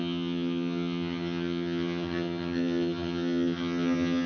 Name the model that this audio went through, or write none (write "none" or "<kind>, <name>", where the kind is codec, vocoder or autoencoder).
vocoder, HiFi-GAN